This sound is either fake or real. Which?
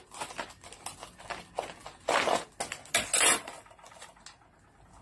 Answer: real